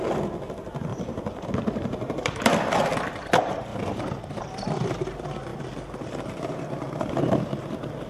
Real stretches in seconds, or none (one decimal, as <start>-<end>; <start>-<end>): 0.9-1.5; 3.7-4.3; 5.5-7.4